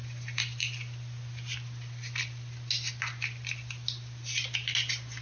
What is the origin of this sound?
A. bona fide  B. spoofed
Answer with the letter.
A